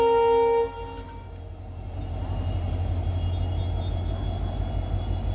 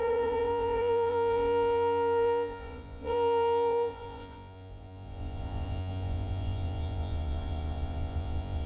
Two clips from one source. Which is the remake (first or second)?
second